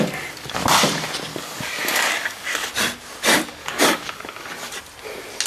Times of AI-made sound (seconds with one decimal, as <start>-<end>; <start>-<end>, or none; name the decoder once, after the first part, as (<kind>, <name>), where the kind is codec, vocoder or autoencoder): 1.3-2.7 (codec, DAC); 3.6-4.8